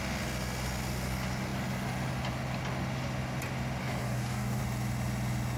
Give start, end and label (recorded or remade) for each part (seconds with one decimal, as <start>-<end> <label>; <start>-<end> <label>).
0.0-3.8 recorded; 3.8-4.6 remade; 4.6-5.6 recorded